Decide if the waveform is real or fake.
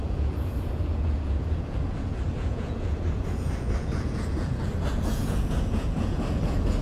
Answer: fake